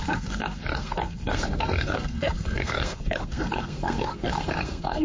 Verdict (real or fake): fake